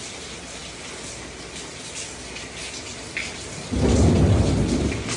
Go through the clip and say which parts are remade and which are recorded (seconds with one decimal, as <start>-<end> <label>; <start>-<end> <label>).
0.0-5.2 recorded